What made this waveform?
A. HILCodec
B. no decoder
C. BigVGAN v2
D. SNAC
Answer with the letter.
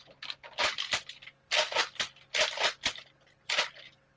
B